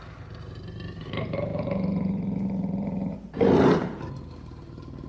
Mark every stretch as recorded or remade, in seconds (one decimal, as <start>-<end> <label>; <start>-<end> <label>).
0.0-5.1 recorded